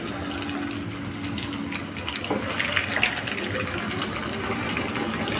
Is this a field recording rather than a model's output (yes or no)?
yes